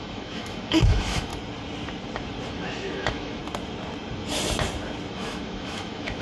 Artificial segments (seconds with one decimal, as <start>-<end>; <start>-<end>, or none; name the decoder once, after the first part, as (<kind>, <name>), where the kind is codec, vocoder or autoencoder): 0.0-1.3 (autoencoder, DAC-VAE); 2.5-3.4; 5.1-6.2